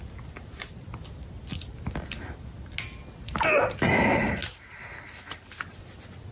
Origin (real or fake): real